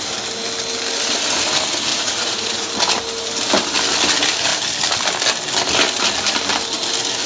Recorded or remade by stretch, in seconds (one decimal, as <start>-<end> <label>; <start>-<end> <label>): 0.0-1.9 recorded; 1.9-2.7 remade; 2.7-7.3 recorded